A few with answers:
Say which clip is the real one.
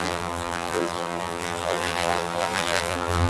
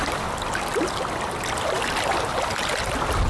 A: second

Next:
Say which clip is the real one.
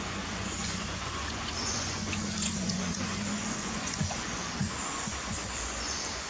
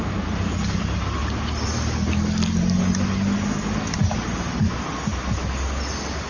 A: second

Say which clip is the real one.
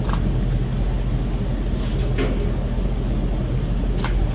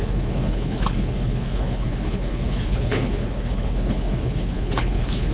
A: first